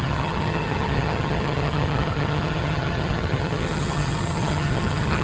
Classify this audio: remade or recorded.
remade